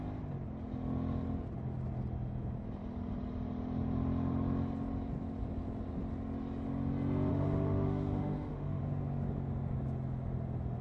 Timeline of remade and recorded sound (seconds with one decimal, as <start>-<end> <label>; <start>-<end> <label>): 0.0-7.3 recorded; 7.3-8.8 remade; 8.8-10.8 recorded